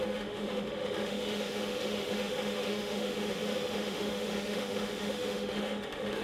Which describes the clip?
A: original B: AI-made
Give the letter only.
B